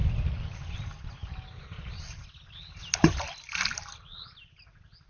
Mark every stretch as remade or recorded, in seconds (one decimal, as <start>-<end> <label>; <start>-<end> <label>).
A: 0.0-5.1 recorded